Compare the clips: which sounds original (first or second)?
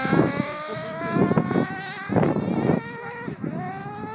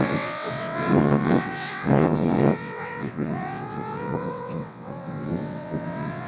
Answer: first